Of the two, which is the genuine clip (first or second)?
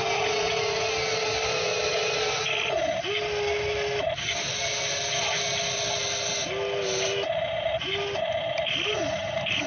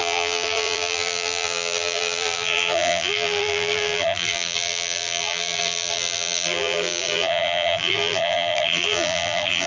first